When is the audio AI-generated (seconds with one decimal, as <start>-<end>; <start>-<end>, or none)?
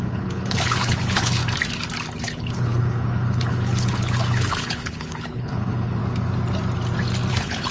0.0-1.4; 2.2-6.0; 7.3-7.7